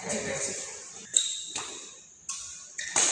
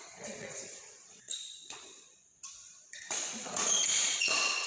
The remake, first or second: second